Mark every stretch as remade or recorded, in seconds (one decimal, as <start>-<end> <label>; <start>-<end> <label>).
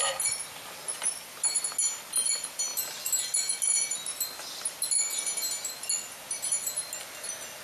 0.0-7.6 recorded